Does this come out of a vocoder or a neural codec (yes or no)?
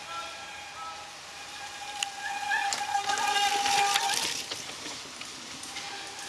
no